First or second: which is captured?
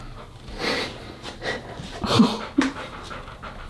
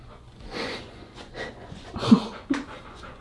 first